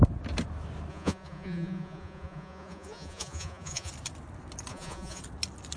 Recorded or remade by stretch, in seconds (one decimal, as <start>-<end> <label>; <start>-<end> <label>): 0.0-0.9 recorded; 0.9-3.9 remade; 3.9-4.7 recorded; 4.7-5.2 remade; 5.2-5.8 recorded